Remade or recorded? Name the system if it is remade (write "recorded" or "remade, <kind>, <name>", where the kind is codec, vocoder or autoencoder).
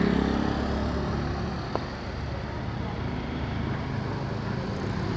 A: recorded